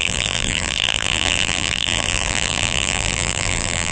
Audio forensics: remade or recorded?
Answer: remade